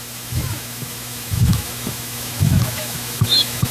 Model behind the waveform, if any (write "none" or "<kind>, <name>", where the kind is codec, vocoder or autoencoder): autoencoder, DAC-VAE